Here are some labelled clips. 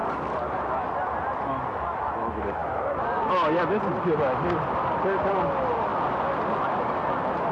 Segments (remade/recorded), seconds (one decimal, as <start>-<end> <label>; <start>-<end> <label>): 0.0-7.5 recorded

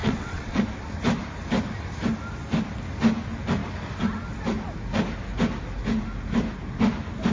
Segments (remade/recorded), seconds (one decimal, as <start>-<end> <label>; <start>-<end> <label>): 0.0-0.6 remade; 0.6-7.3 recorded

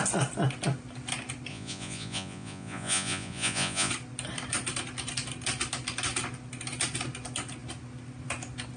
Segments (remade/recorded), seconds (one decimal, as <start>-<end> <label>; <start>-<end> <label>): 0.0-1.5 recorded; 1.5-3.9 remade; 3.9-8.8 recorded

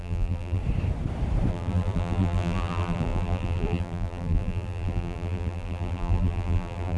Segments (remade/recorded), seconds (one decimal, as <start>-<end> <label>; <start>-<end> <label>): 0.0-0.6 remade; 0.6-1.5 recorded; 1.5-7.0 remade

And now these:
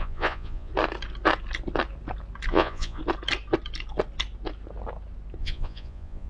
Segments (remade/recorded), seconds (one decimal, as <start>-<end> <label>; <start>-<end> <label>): 0.0-0.7 remade; 0.7-2.5 recorded; 2.5-3.0 remade; 3.0-5.4 recorded; 5.4-6.3 remade

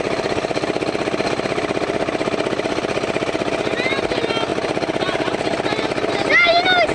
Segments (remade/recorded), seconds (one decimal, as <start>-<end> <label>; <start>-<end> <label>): 0.0-6.9 recorded

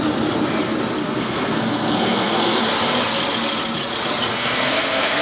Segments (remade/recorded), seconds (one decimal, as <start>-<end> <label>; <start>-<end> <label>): 0.0-1.0 recorded; 1.0-2.6 remade; 2.6-4.3 recorded; 4.3-5.2 remade

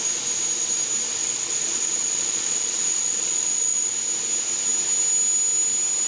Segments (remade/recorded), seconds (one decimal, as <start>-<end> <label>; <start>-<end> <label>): 0.0-1.2 recorded; 1.2-3.9 remade; 3.9-6.1 recorded